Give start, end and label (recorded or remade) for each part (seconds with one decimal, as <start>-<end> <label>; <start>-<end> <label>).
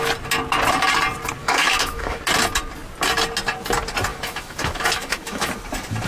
0.0-1.4 recorded; 1.4-2.2 remade; 2.2-4.1 recorded; 4.1-5.5 remade; 5.5-6.1 recorded